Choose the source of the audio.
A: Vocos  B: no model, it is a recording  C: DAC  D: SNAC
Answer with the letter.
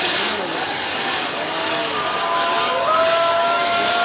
C